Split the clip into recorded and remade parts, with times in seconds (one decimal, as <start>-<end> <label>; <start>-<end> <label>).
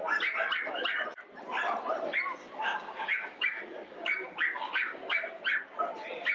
0.0-2.4 recorded; 2.4-5.4 remade; 5.4-6.3 recorded